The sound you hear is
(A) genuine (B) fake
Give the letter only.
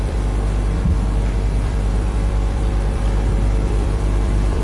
B